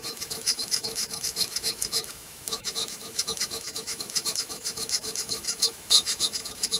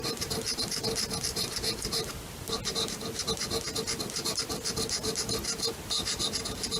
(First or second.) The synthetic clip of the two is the first